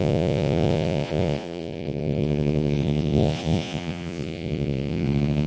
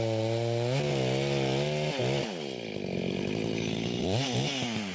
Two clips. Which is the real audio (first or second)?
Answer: second